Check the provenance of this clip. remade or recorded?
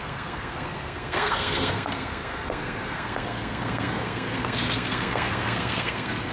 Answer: remade